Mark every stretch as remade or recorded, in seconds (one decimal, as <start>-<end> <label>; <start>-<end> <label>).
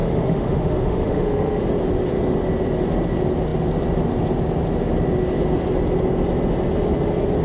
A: 0.0-1.6 remade; 1.6-7.4 recorded